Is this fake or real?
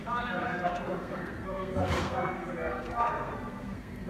fake